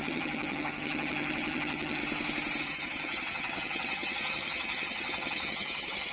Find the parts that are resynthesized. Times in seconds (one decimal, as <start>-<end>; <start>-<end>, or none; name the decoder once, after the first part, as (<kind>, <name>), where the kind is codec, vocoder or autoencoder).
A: 0.0-2.0 (vocoder, HiFi-GAN); 2.6-6.1